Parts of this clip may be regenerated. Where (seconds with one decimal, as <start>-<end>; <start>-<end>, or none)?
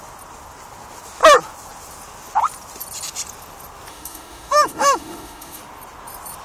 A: 3.9-5.6